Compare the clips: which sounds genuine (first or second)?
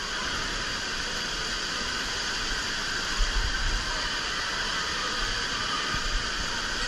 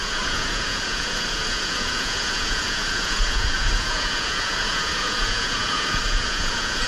first